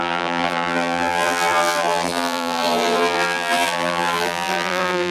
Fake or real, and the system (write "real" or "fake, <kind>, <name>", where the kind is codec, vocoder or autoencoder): fake, vocoder, BigVGAN v2